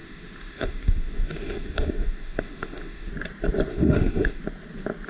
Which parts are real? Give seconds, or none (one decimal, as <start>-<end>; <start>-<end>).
3.1-3.7; 4.4-5.1